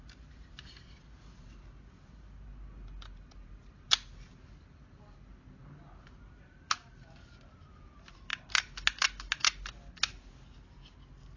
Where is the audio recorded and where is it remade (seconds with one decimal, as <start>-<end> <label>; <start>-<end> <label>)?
0.0-11.4 recorded